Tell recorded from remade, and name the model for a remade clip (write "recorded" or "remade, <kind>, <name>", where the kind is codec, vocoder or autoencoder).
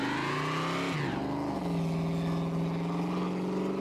recorded